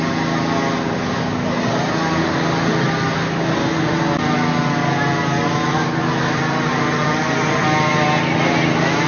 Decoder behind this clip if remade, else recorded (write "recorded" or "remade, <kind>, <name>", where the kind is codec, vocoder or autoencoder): recorded